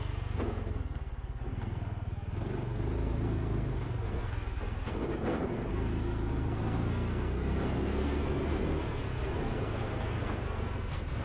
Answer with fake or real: fake